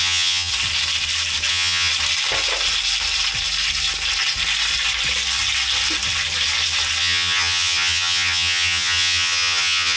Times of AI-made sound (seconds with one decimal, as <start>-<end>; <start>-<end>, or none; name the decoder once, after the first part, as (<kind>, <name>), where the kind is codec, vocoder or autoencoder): 0.0-0.5 (vocoder, HiFi-GAN); 1.5-1.9; 7.0-10.0